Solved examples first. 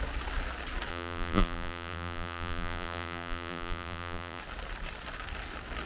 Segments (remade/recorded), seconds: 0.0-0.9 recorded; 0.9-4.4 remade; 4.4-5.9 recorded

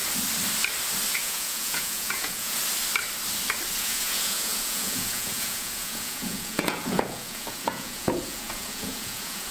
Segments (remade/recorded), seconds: 0.0-1.1 recorded; 1.1-2.6 remade; 2.6-3.8 recorded; 3.8-9.5 remade

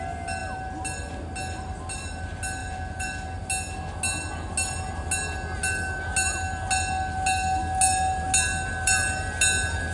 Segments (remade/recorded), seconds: 0.0-2.6 recorded; 2.6-3.1 remade; 3.1-9.9 recorded

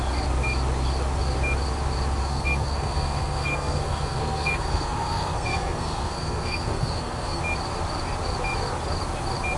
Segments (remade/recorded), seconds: 0.0-2.2 recorded; 2.2-7.4 remade; 7.4-9.6 recorded